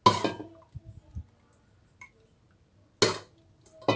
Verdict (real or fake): real